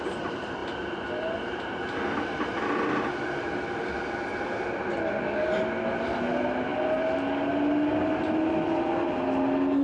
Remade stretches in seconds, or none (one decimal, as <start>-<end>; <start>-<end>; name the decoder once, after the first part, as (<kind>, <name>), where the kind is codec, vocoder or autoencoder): none